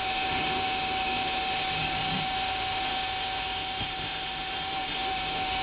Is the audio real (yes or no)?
no